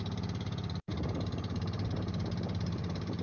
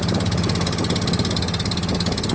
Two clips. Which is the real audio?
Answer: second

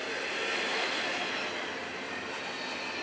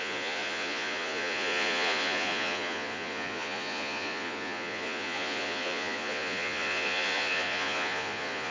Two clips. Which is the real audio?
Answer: first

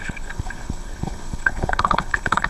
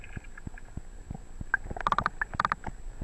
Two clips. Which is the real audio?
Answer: second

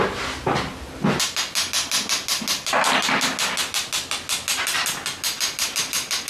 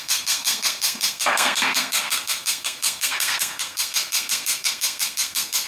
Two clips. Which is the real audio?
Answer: first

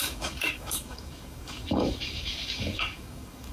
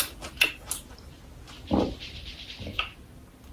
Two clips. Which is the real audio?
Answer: second